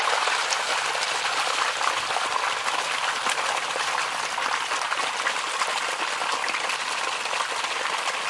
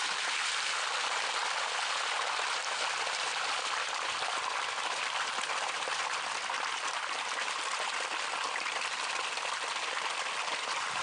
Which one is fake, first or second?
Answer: second